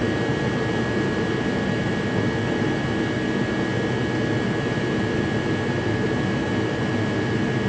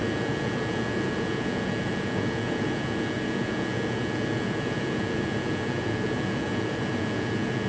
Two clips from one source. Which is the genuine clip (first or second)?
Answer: first